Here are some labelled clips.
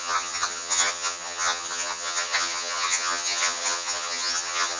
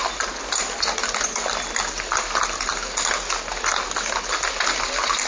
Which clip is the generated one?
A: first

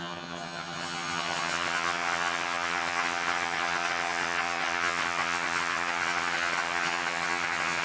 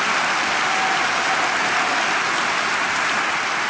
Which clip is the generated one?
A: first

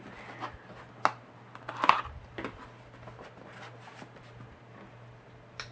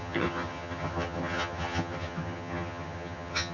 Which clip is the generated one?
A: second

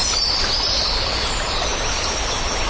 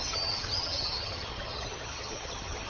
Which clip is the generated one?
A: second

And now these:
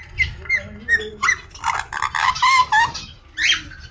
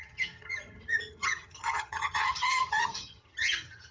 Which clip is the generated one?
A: second